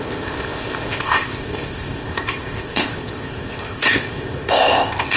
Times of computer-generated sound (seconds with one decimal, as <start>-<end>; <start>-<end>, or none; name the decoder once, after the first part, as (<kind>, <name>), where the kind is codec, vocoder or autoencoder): 0.0-5.2 (codec, ZipCodec)